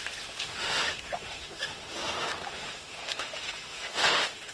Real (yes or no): no